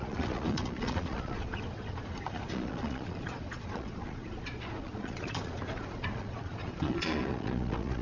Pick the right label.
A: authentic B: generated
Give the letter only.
B